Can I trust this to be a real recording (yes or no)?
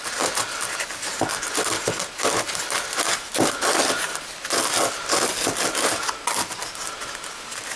yes